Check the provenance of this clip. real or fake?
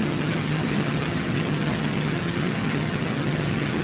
fake